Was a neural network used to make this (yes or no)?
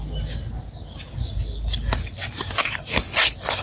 no